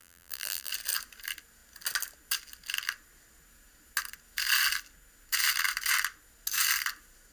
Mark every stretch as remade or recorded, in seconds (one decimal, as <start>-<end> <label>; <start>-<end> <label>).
0.0-0.7 remade; 0.7-7.3 recorded